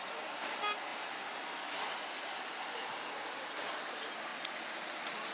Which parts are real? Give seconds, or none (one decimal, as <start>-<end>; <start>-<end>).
0.0-5.3